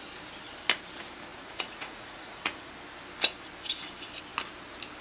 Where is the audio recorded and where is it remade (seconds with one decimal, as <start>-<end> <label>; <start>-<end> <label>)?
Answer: 0.0-1.3 recorded; 1.3-2.7 remade; 2.7-5.0 recorded